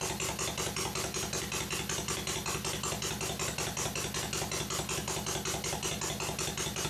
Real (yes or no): yes